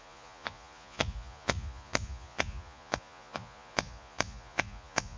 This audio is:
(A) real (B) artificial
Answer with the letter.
B